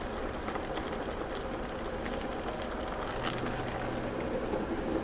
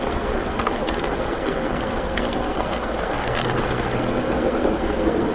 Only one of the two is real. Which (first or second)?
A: first